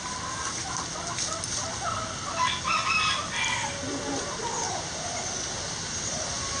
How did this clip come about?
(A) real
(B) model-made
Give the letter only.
A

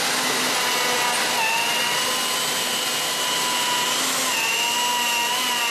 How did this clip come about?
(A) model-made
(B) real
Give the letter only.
B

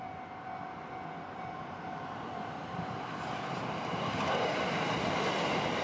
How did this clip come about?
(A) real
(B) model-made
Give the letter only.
A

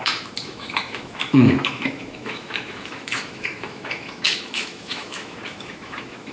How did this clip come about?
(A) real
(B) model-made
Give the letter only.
B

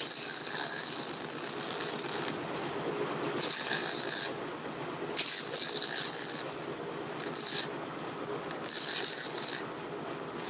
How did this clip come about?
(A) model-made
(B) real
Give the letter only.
B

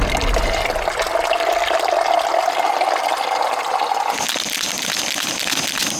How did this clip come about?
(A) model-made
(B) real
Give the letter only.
B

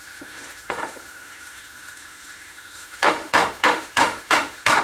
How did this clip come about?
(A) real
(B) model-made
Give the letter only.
B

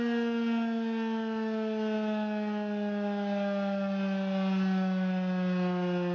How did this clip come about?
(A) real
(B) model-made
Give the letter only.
A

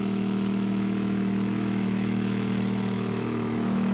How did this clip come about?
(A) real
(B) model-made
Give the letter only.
B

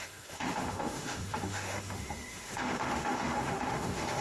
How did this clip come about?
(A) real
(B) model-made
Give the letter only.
B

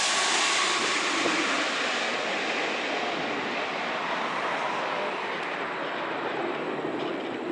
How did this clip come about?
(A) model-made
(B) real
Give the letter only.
B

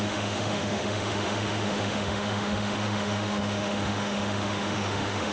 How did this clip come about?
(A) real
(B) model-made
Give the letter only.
B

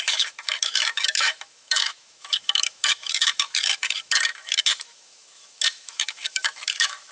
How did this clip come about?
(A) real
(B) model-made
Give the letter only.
B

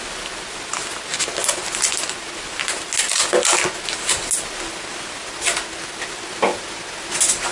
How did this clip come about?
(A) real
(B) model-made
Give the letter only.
A